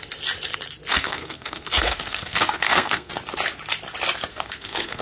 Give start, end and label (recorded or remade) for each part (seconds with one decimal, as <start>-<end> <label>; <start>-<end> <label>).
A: 0.0-0.9 recorded; 0.9-3.1 remade; 3.1-4.3 recorded; 4.3-5.0 remade